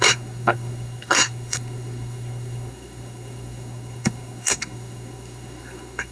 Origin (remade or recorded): remade